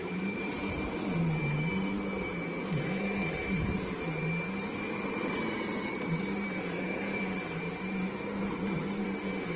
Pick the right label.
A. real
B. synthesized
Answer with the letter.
B